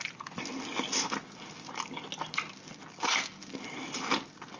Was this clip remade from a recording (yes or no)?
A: no